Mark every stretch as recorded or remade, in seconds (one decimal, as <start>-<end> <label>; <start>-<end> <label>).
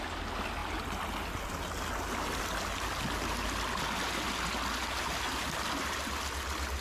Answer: 0.0-6.8 recorded